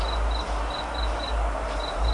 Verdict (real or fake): real